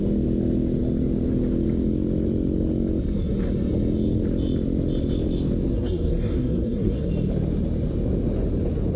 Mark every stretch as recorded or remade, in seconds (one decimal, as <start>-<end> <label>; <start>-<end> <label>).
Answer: 0.0-5.7 recorded; 5.7-7.1 remade; 7.1-9.0 recorded